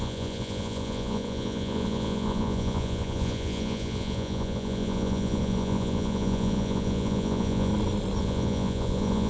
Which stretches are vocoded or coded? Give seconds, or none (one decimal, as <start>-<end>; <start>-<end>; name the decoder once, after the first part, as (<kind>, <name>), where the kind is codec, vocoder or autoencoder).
0.0-7.7 (vocoder, Vocos); 8.2-9.3